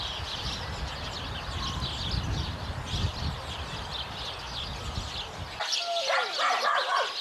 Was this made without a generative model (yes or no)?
yes